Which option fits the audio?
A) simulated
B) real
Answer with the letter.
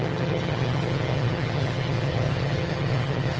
A